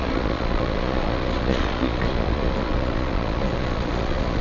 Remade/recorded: remade